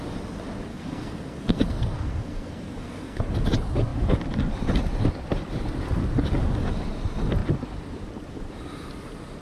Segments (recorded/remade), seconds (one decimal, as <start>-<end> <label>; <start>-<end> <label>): 0.0-0.7 recorded; 0.7-3.2 remade; 3.2-9.4 recorded